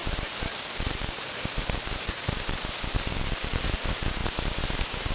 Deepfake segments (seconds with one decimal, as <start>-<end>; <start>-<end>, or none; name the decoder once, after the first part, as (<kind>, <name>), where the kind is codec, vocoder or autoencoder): 0.9-4.2 (vocoder, BigVGAN v2)